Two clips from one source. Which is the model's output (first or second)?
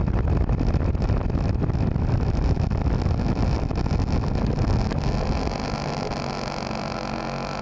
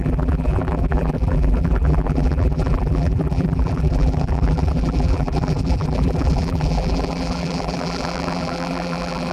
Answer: second